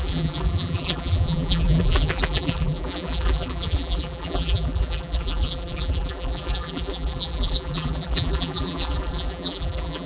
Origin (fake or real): fake